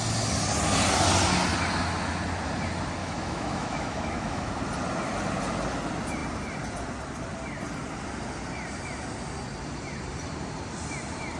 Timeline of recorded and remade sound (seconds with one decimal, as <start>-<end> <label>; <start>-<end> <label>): 0.0-3.0 recorded; 3.0-4.5 remade; 4.5-11.4 recorded